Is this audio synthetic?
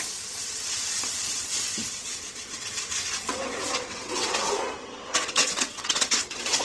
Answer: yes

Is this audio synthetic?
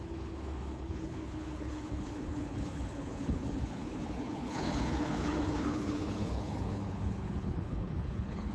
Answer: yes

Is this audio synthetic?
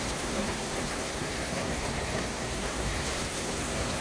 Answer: yes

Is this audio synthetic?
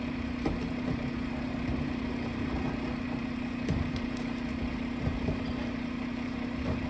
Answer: yes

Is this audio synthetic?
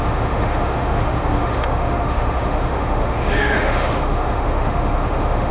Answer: yes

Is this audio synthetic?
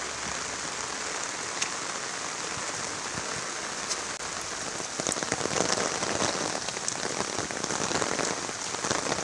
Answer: no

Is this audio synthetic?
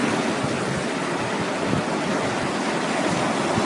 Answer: no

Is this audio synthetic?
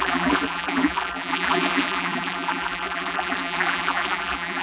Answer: yes